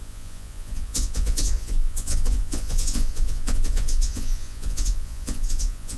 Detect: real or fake fake